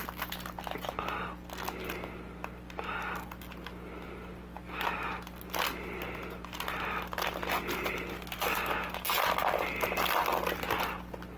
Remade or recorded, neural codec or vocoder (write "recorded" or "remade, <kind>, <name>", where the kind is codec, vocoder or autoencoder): recorded